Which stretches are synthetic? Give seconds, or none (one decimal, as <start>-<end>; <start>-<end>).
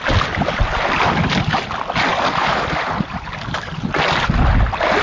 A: none